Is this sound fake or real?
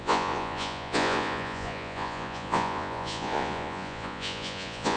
fake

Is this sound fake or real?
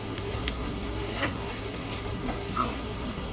fake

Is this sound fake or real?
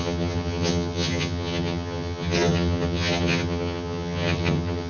fake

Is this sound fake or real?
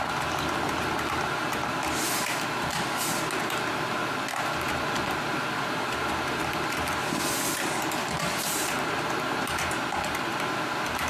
real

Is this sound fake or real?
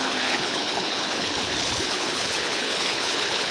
fake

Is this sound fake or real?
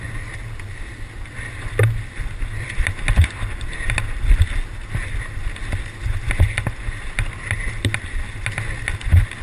real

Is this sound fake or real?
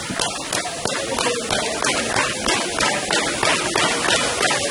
real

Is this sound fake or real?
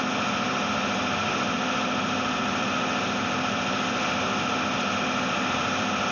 real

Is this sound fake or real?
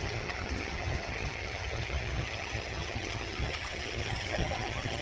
fake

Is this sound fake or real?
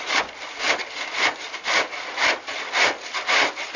real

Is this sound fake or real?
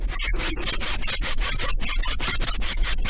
real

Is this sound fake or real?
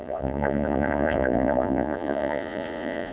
fake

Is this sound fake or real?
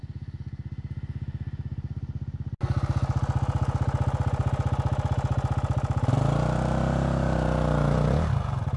real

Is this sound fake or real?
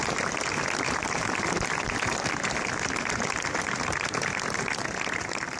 real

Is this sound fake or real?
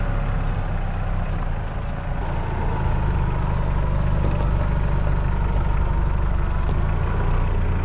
real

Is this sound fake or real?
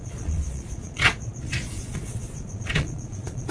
fake